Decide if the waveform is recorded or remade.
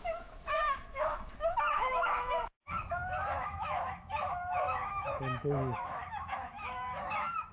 remade